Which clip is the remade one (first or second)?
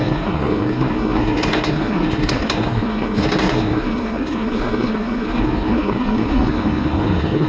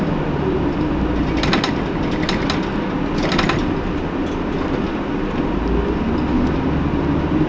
first